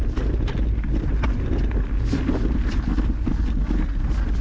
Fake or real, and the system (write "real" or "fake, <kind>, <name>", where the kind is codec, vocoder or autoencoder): real